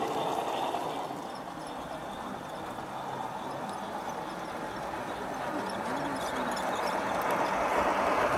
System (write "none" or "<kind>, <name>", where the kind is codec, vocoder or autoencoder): none